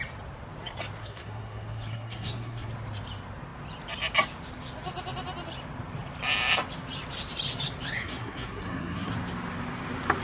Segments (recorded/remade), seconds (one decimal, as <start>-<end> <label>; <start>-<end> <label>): 0.0-1.0 recorded; 1.0-2.7 remade; 2.7-7.9 recorded; 7.9-9.1 remade; 9.1-10.2 recorded